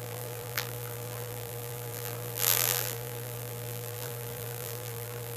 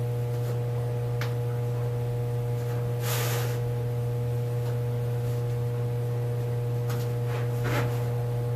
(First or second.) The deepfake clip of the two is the first